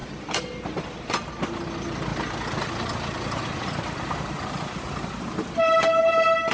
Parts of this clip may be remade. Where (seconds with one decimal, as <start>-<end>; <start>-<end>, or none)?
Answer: none